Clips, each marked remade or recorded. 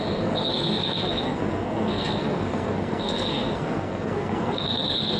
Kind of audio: remade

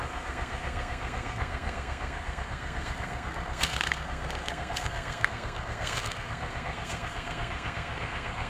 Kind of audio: remade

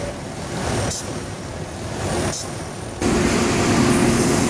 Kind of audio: recorded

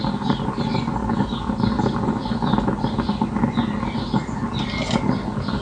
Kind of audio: recorded